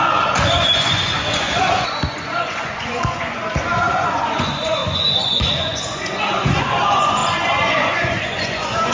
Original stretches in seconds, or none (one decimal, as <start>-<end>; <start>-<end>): none